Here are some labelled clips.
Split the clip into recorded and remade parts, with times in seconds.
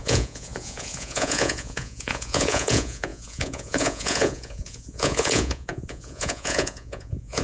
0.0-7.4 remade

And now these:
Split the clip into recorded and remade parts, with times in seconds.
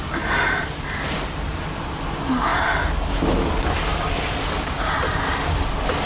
0.0-6.1 recorded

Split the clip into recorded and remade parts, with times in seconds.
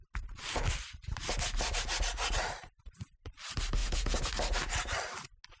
0.0-3.8 recorded; 3.8-4.3 remade; 4.3-5.6 recorded